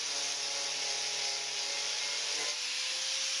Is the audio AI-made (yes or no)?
no